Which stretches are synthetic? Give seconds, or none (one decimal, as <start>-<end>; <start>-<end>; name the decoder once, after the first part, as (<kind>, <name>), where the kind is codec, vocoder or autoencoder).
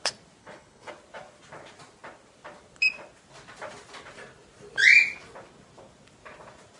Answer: 0.4-0.9 (codec, HILCodec)